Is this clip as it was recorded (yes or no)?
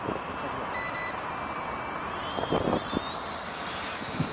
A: yes